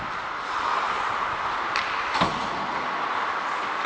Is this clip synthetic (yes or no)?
no